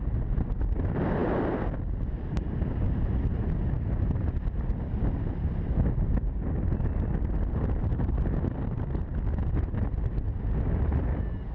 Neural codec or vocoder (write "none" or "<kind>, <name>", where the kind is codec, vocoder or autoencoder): none